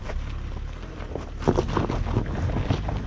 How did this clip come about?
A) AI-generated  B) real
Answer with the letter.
B